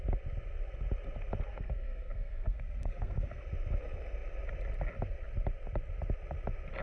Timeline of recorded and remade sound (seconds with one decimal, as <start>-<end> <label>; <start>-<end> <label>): 0.0-1.5 recorded; 1.5-3.4 remade; 3.4-6.8 recorded